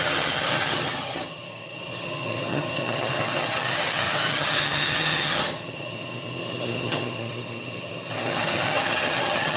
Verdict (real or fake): fake